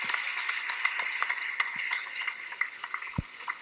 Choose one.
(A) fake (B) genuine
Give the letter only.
A